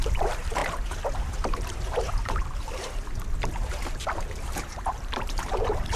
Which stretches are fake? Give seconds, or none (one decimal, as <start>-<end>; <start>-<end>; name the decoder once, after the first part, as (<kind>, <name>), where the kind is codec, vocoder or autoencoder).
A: 0.0-0.6 (vocoder, BigVGAN v2); 3.9-6.0